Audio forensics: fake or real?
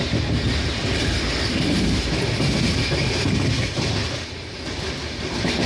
real